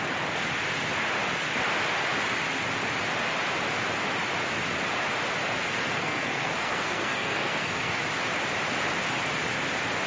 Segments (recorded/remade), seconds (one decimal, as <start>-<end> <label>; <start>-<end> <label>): 0.0-5.6 recorded; 5.6-8.0 remade; 8.0-10.1 recorded

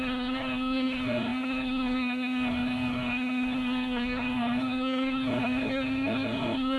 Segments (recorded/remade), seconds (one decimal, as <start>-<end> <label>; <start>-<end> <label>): 0.0-6.8 remade